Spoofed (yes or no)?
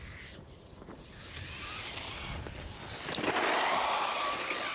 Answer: no